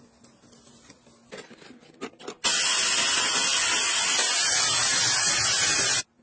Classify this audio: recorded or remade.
recorded